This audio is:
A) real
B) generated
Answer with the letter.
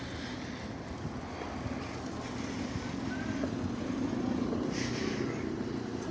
A